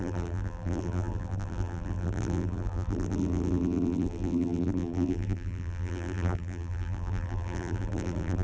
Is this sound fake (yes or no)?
yes